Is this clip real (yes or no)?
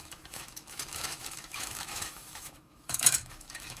no